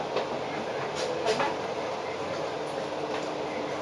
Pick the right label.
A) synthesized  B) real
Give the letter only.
B